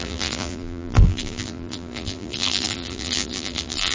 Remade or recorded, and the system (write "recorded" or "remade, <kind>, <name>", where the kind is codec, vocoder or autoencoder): remade, vocoder, BigVGAN v2